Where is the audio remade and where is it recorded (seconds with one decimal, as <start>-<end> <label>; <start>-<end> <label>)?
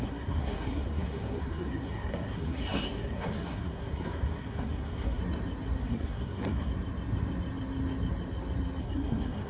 0.0-5.2 remade; 5.2-5.8 recorded; 5.8-6.7 remade; 6.7-8.8 recorded; 8.8-9.5 remade